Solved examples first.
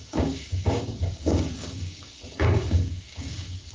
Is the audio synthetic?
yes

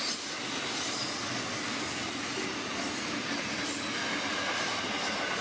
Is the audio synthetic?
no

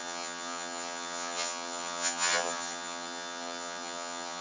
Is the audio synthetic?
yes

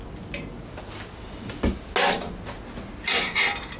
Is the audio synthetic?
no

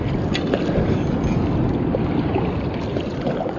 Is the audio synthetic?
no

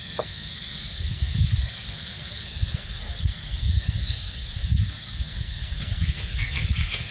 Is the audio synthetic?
yes